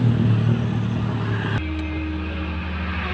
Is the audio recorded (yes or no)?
yes